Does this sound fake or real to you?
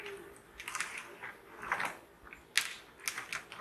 real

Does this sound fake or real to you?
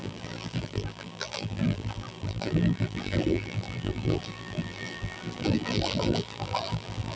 fake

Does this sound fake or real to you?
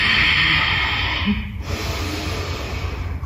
real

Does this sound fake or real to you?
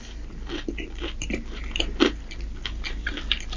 real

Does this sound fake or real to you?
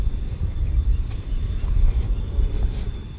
real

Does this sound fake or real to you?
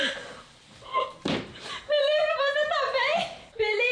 fake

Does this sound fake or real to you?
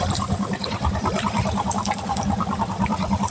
fake